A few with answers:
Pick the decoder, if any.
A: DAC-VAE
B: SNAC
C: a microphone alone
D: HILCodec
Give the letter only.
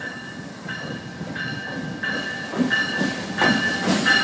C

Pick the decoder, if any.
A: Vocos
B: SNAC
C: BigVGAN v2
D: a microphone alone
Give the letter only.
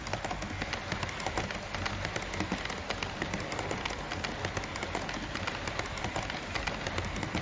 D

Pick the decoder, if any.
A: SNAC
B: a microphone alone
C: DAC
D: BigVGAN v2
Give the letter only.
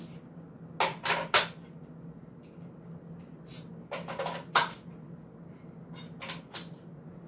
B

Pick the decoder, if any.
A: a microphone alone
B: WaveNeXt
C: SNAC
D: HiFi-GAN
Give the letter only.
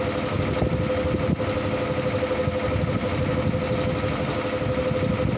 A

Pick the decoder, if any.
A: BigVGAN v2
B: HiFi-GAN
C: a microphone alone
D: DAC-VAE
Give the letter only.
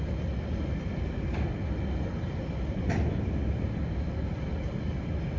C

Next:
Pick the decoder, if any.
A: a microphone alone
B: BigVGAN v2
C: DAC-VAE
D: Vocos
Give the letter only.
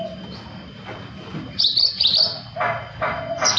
A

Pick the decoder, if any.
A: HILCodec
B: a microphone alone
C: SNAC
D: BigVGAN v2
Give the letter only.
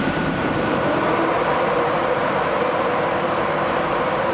D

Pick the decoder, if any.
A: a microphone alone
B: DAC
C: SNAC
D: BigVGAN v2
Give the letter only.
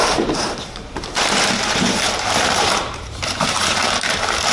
D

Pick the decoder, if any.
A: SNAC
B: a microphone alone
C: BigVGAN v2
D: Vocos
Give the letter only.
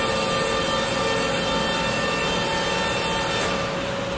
B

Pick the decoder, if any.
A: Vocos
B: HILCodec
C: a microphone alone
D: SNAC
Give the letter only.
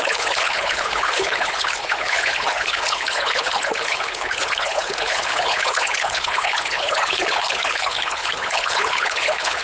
B